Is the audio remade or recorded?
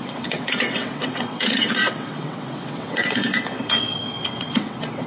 remade